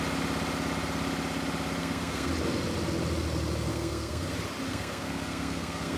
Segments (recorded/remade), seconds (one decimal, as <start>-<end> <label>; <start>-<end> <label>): 0.0-1.8 recorded; 1.8-2.3 remade; 2.3-3.7 recorded; 3.7-4.3 remade; 4.3-4.7 recorded; 4.7-6.0 remade